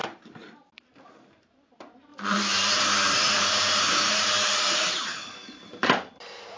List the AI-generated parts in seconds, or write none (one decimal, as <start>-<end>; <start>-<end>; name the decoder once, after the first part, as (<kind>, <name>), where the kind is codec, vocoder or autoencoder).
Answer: 0.0-6.6 (vocoder, BigVGAN v2)